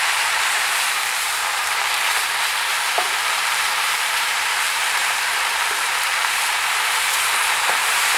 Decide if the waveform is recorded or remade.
remade